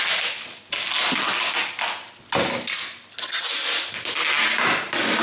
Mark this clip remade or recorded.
recorded